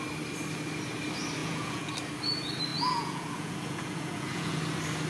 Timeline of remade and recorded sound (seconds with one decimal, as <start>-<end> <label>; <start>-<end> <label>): 0.0-1.4 recorded; 1.4-1.9 remade; 1.9-2.7 recorded; 2.7-4.6 remade; 4.6-5.1 recorded